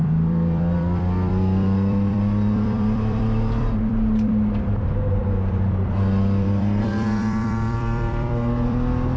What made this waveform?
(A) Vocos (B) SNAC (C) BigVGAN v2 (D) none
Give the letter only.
C